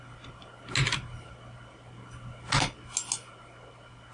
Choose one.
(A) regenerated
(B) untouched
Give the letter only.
B